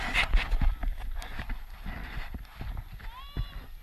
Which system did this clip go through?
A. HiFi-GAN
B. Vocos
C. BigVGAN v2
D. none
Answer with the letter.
D